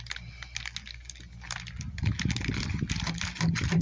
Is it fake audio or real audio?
real